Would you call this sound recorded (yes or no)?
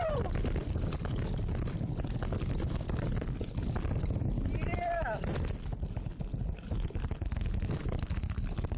yes